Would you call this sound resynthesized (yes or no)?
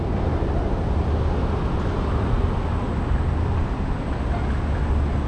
no